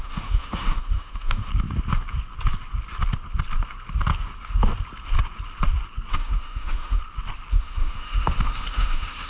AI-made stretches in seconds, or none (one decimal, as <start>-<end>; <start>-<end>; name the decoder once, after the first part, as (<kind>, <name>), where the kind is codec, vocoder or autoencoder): 0.0-1.5 (autoencoder, DAC-VAE); 6.1-7.0; 7.5-9.3